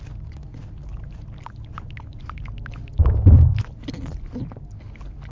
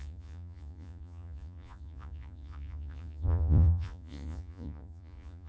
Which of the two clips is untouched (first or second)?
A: first